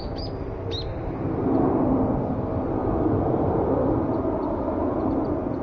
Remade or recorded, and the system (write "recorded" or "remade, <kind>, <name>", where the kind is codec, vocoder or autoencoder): recorded